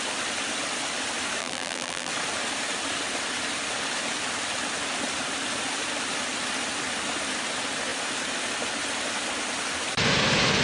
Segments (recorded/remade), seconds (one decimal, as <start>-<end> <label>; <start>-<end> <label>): 0.0-1.4 recorded; 1.4-2.1 remade; 2.1-10.6 recorded